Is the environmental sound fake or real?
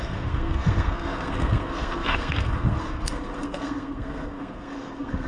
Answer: fake